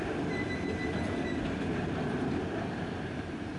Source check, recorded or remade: recorded